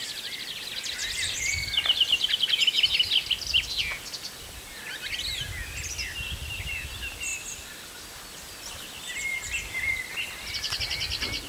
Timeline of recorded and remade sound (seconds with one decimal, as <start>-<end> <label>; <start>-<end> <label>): 0.0-11.5 recorded